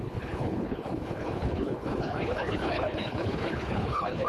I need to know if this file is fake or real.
fake